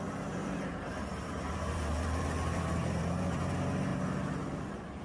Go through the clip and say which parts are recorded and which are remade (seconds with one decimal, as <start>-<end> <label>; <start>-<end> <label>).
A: 0.0-0.4 recorded; 0.4-3.4 remade; 3.4-3.9 recorded; 3.9-5.0 remade